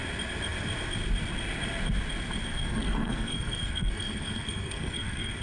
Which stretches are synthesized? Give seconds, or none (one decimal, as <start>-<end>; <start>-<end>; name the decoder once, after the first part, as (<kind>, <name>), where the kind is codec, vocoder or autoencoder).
2.5-5.4 (codec, SNAC)